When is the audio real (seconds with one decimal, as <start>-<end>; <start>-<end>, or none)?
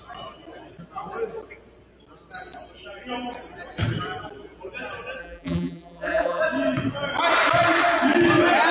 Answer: 0.0-5.2; 6.4-8.7